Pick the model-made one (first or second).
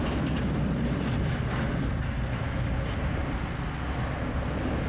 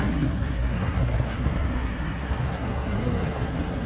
second